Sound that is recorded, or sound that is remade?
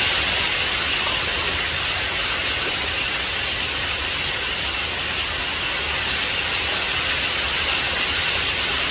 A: recorded